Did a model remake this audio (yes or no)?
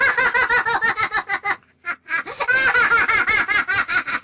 no